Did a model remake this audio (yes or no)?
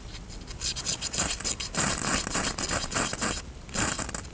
no